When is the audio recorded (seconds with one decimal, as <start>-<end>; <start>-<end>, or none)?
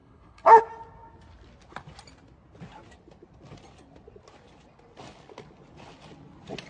0.6-6.7